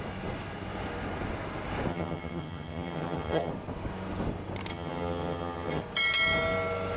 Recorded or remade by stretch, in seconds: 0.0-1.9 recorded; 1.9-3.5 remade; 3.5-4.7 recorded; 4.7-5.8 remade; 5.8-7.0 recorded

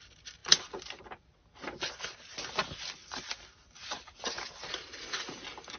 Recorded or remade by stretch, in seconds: 0.0-5.8 recorded

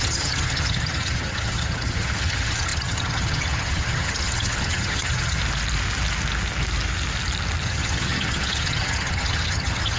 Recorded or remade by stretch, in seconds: 0.0-5.4 remade; 5.4-7.6 recorded; 7.6-10.0 remade

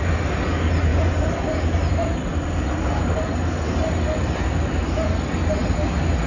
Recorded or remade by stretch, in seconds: 0.0-6.3 recorded

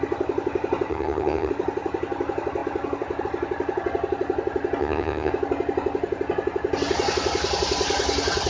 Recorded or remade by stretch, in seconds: 0.0-0.9 recorded; 0.9-1.5 remade; 1.5-4.8 recorded; 4.8-5.3 remade; 5.3-8.5 recorded

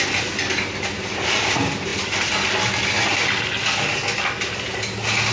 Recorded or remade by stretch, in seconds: 0.0-5.3 recorded

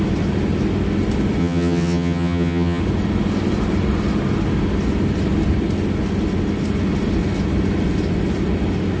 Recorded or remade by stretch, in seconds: 0.0-1.4 recorded; 1.4-2.8 remade; 2.8-9.0 recorded